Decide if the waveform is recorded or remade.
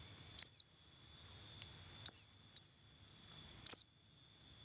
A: recorded